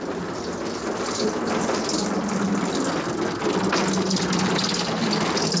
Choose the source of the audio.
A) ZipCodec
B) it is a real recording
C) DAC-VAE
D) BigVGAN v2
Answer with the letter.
B